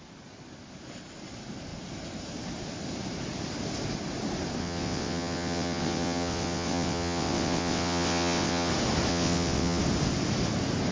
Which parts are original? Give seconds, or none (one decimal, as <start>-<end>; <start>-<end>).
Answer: 0.0-4.6; 8.7-9.1; 9.8-10.9